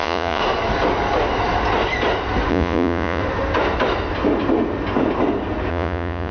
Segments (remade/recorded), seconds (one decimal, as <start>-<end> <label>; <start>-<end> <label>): 0.0-0.4 remade; 0.4-2.5 recorded; 2.5-3.2 remade; 3.2-5.7 recorded; 5.7-6.3 remade